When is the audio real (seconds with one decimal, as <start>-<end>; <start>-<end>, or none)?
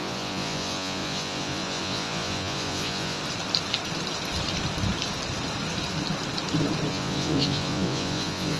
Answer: 3.2-6.9